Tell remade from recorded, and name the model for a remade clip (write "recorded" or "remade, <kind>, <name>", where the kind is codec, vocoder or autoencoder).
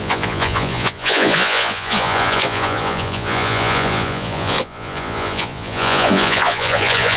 remade, vocoder, Vocos